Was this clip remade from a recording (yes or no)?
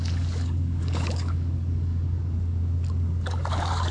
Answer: yes